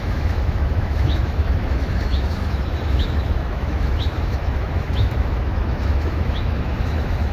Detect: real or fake fake